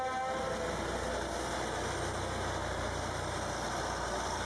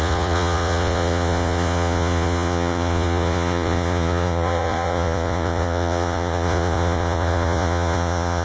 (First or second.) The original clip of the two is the first